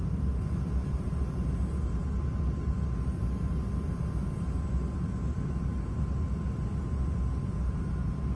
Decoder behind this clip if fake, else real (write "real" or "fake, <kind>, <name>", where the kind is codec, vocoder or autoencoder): real